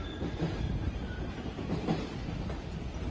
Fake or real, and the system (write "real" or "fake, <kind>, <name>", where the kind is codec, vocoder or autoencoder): real